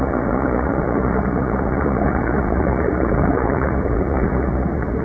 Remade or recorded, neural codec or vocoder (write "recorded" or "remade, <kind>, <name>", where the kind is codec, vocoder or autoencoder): remade, vocoder, Vocos